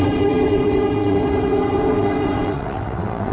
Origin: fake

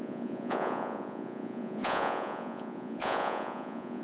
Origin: fake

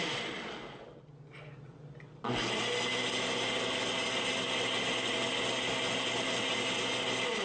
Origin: real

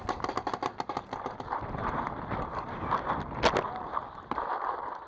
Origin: real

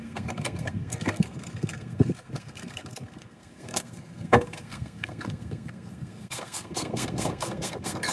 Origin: fake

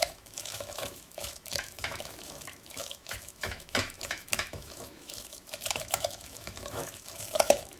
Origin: fake